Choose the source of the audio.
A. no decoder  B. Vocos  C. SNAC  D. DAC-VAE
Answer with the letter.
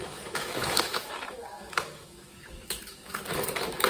D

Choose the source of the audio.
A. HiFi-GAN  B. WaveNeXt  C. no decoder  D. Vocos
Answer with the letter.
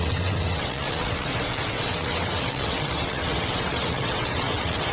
B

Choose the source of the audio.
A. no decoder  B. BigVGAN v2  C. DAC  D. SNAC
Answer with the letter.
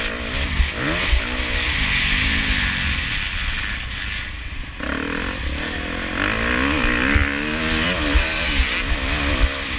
A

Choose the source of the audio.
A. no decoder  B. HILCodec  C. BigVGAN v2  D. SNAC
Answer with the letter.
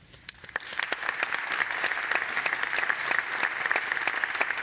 A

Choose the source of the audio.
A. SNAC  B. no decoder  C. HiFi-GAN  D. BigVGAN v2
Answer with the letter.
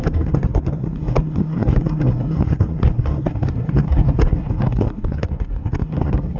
A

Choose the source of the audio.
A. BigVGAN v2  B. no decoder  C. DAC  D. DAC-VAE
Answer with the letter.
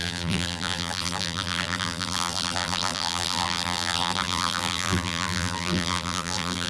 A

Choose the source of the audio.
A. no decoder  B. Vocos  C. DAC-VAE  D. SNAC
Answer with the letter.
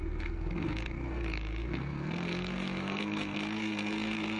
D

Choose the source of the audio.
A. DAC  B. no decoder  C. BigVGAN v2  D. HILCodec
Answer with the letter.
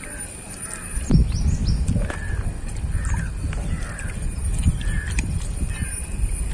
B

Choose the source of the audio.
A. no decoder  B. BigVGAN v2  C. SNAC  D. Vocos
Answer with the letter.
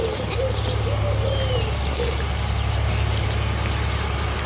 A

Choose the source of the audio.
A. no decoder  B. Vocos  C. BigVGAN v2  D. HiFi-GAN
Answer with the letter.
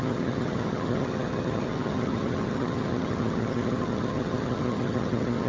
D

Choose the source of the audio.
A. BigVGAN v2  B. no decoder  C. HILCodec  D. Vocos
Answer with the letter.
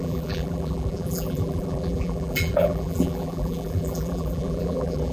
A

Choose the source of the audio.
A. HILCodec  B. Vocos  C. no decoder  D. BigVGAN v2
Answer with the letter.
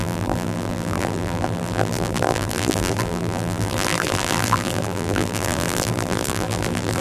D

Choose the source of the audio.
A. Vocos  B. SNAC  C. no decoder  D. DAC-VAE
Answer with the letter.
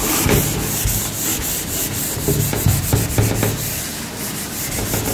C